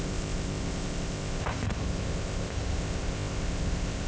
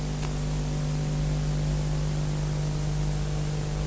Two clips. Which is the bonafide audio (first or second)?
second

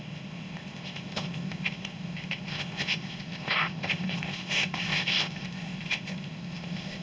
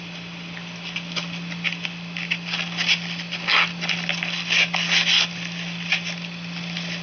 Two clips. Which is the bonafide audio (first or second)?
second